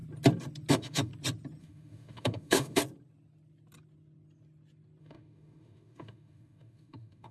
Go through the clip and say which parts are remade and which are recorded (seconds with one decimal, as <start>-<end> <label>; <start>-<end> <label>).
0.0-0.7 recorded; 0.7-1.1 remade; 1.1-1.6 recorded; 1.6-2.8 remade; 2.8-5.0 recorded; 5.0-7.3 remade

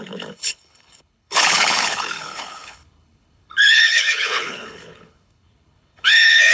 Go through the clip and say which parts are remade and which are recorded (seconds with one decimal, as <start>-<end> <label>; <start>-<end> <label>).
0.0-6.5 remade

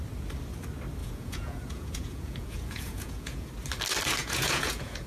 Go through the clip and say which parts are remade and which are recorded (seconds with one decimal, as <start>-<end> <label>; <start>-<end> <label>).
0.0-1.0 recorded; 1.0-3.5 remade; 3.5-4.2 recorded; 4.2-5.1 remade

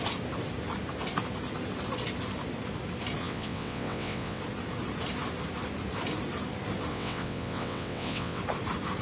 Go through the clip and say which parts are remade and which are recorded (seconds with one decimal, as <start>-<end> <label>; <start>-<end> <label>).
0.0-3.2 recorded; 3.2-4.4 remade; 4.4-6.9 recorded; 6.9-8.4 remade; 8.4-9.0 recorded

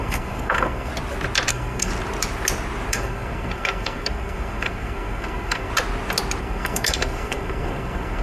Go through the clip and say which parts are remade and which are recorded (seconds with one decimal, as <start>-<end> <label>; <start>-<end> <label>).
0.0-0.9 remade; 0.9-1.5 recorded; 1.5-1.9 remade; 1.9-2.9 recorded; 2.9-5.7 remade; 5.7-6.4 recorded; 6.4-8.2 remade

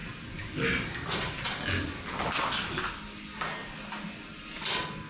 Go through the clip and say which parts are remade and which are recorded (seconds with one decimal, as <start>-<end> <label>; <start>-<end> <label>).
0.0-5.1 recorded